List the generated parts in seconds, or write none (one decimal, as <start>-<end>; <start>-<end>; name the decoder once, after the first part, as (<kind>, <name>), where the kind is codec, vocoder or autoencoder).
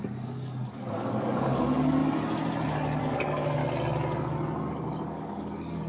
0.0-2.0 (codec, DAC); 3.0-3.6; 4.7-5.9